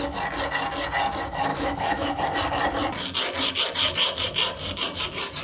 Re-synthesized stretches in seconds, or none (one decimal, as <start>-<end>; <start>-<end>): 1.5-2.2